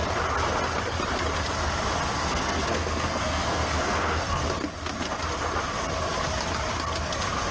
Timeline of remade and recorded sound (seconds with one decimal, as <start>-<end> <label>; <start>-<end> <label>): 0.0-2.2 recorded; 2.2-4.4 remade; 4.4-7.5 recorded